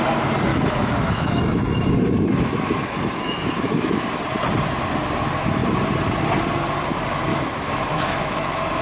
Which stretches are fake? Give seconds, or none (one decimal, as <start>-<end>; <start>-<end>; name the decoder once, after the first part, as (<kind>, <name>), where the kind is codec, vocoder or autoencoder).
0.5-4.2 (autoencoder, DAC-VAE); 7.3-8.8